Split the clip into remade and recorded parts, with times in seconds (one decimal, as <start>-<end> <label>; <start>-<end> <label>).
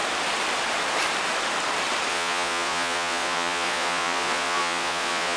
0.0-2.1 recorded; 2.1-5.4 remade